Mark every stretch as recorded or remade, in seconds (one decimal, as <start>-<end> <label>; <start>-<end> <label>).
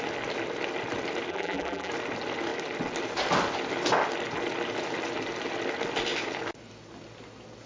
0.0-1.3 recorded; 1.3-1.9 remade; 1.9-7.7 recorded